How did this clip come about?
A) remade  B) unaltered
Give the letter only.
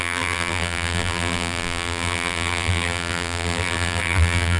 A